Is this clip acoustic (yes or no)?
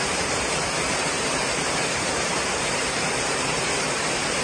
no